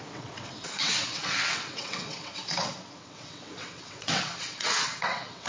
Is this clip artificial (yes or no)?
yes